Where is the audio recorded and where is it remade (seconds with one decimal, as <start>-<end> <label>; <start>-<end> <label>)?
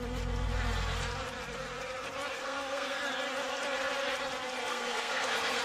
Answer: 0.0-2.4 recorded; 2.4-3.0 remade; 3.0-4.7 recorded; 4.7-5.6 remade